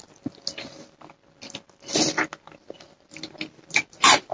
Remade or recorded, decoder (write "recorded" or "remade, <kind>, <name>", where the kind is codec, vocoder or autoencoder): recorded